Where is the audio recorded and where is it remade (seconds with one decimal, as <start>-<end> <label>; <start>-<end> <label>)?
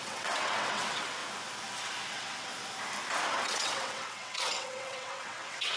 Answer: 0.0-1.2 remade; 1.2-2.1 recorded; 2.1-2.5 remade; 2.5-3.3 recorded; 3.3-5.8 remade